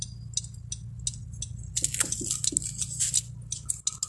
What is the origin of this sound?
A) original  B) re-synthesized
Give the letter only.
A